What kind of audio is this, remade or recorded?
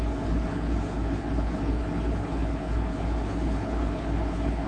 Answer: remade